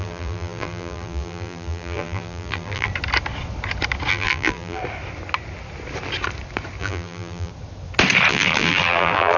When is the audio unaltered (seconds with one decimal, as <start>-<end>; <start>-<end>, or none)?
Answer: 2.9-4.1; 4.8-6.8; 7.5-8.3